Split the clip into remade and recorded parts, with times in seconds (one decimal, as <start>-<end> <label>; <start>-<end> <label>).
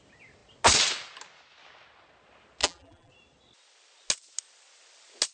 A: 0.0-2.6 recorded; 2.6-3.1 remade; 3.1-5.3 recorded